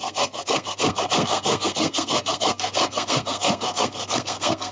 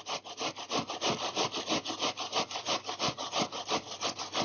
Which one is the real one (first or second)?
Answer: second